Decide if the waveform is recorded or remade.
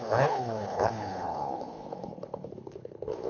remade